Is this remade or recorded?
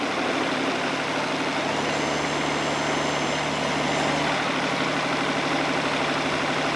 recorded